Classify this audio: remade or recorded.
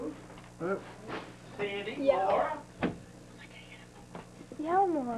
recorded